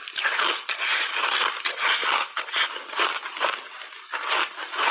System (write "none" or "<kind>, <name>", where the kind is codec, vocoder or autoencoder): none